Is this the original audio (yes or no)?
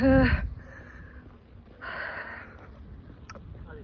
yes